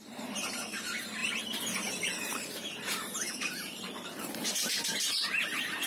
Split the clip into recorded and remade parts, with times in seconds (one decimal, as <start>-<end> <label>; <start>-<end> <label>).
0.0-5.9 remade